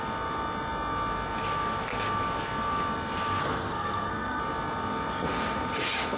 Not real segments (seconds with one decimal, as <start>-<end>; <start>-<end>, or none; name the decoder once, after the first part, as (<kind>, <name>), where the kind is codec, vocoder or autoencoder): 3.4-4.4 (codec, SNAC)